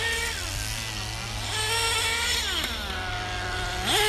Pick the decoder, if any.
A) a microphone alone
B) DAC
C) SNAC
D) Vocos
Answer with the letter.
A